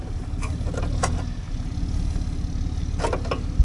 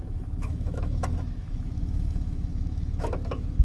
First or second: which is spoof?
second